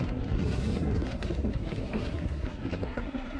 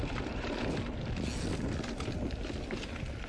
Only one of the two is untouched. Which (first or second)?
second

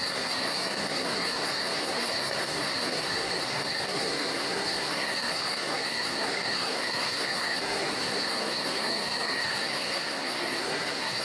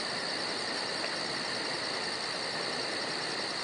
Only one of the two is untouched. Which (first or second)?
second